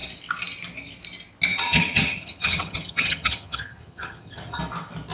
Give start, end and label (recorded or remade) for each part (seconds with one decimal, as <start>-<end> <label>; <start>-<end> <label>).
0.0-1.5 recorded; 1.5-4.6 remade; 4.6-5.1 recorded